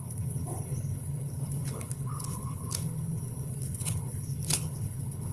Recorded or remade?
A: remade